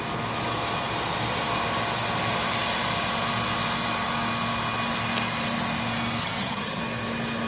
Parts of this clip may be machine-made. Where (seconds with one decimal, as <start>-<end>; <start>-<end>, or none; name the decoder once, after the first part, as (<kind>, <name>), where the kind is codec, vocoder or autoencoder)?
6.2-6.8 (vocoder, HiFi-GAN)